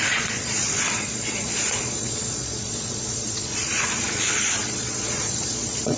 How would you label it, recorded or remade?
remade